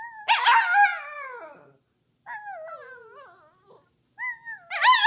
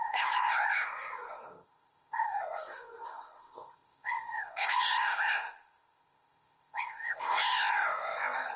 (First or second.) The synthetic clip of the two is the second